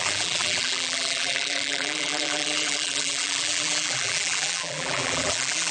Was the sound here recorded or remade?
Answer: remade